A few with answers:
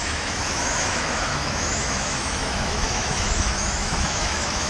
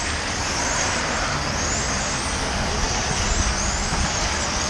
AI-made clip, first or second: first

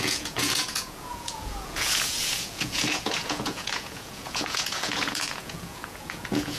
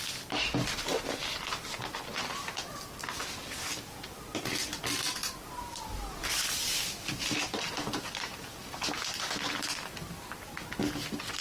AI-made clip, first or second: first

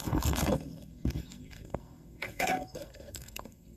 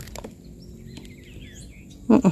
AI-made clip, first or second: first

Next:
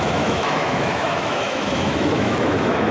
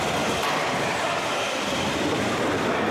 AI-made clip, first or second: first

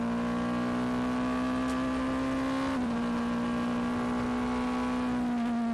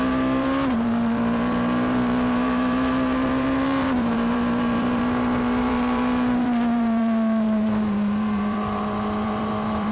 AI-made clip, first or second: second